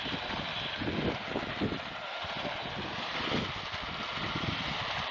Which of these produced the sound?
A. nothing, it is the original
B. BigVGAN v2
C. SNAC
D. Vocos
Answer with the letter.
A